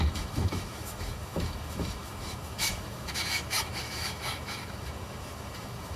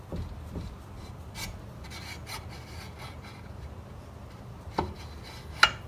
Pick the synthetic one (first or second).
first